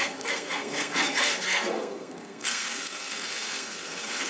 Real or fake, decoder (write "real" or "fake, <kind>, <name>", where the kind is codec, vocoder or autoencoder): fake, codec, SNAC